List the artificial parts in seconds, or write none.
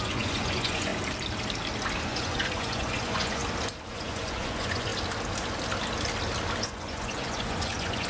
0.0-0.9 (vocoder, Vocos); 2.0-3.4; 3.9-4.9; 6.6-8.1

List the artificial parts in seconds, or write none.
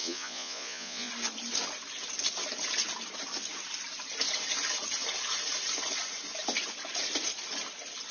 0.0-1.1 (vocoder, Vocos)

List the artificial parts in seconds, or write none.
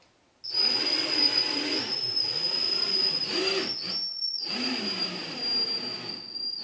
0.6-3.2 (vocoder, Vocos); 4.1-4.8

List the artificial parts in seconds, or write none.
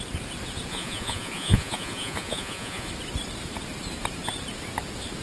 0.7-2.9 (vocoder, Vocos)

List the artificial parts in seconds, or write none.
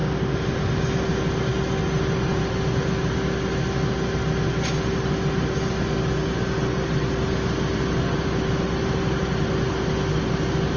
none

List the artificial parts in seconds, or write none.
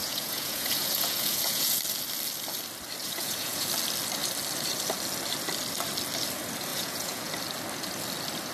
0.0-1.8 (vocoder, Vocos); 3.0-3.7; 6.7-7.3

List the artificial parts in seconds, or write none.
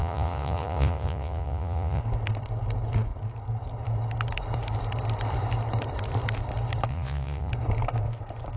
0.0-2.0 (vocoder, Vocos); 6.9-7.5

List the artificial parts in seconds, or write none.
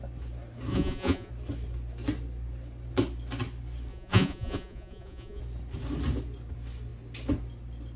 0.7-1.3 (vocoder, Vocos); 3.9-5.4